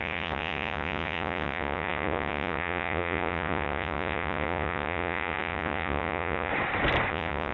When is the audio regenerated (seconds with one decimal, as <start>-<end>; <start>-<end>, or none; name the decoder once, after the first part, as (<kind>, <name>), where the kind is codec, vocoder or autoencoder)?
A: 0.0-6.5 (vocoder, Vocos); 7.1-7.5